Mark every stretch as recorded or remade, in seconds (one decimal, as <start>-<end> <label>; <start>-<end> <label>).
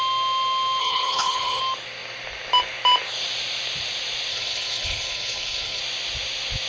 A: 0.0-0.8 recorded; 0.8-1.6 remade; 1.6-4.3 recorded; 4.3-5.8 remade; 5.8-6.7 recorded